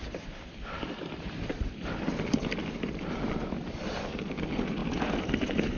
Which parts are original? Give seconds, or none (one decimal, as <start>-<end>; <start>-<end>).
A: none